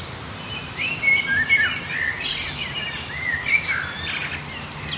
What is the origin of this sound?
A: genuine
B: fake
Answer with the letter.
A